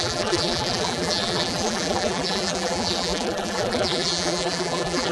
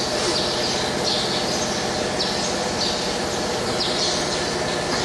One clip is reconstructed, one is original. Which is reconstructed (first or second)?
first